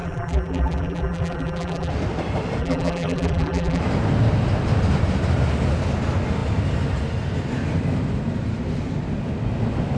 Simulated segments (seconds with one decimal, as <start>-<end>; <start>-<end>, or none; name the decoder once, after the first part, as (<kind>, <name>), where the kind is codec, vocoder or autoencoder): 0.0-1.9 (vocoder, BigVGAN v2); 2.6-3.8